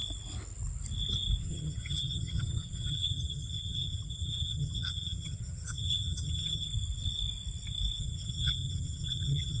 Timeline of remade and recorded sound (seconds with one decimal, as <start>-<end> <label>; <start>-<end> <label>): 0.0-1.4 recorded; 1.4-6.7 remade; 6.7-8.0 recorded; 8.0-9.6 remade